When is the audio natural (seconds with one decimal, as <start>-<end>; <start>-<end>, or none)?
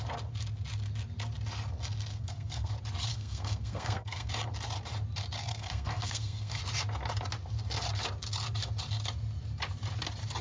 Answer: 0.0-2.1; 2.7-3.1; 4.3-5.5; 6.6-10.4